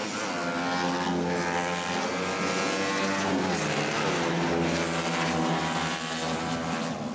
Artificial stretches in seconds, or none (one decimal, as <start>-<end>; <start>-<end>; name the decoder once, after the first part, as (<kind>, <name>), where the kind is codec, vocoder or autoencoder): none